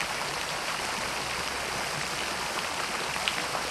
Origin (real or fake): real